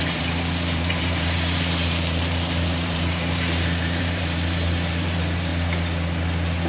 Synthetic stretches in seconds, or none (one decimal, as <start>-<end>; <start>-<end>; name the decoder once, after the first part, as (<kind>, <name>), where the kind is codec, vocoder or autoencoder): 0.0-5.5 (vocoder, BigVGAN v2)